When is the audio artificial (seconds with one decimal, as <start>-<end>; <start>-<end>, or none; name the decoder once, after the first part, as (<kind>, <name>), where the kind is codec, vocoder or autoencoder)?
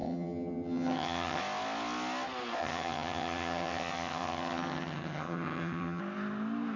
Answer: 0.0-1.4 (vocoder, HiFi-GAN); 2.6-6.0